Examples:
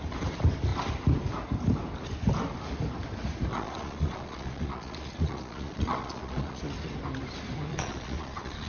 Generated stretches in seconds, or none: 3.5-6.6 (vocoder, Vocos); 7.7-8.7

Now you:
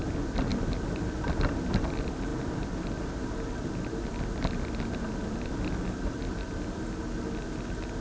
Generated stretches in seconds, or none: none

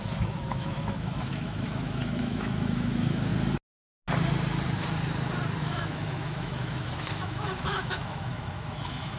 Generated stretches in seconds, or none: 0.0-3.3 (autoencoder, DAC-VAE); 5.6-9.2

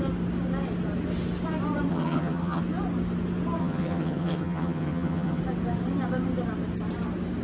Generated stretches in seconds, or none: 1.9-2.6 (vocoder, HiFi-GAN); 3.6-5.4

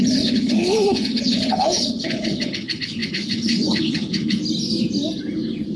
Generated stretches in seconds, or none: 0.0-4.4 (codec, HILCodec)

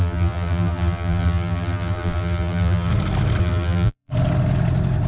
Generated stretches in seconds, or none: 0.0-2.9 (vocoder, BigVGAN v2); 3.4-4.1